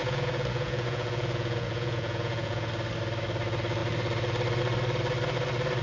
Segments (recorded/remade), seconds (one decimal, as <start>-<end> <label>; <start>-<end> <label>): 0.0-2.7 remade; 2.7-5.8 recorded